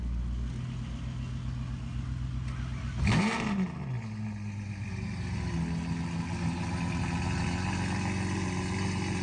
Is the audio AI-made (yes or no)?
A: no